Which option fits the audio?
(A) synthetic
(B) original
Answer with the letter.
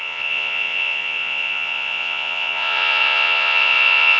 A